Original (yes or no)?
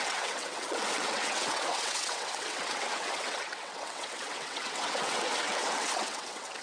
no